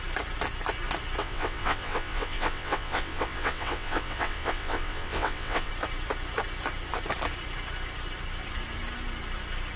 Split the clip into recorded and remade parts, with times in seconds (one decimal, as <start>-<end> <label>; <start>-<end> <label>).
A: 0.0-1.2 recorded; 1.2-5.7 remade; 5.7-9.8 recorded